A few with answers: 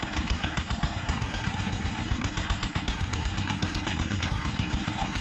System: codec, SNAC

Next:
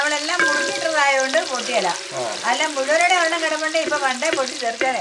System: none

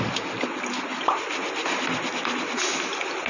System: none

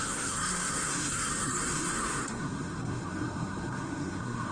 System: codec, SNAC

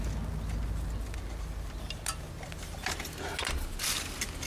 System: none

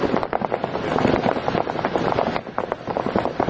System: none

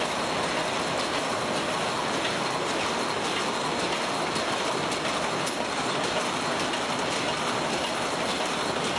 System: none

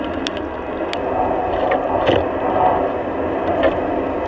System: none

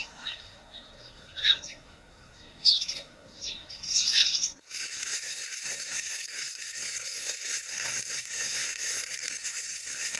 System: codec, SNAC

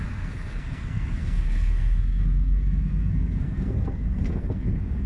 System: codec, SNAC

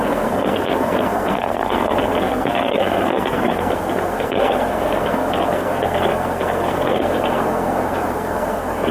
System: codec, SNAC